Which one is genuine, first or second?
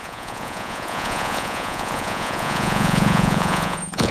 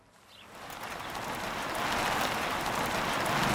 second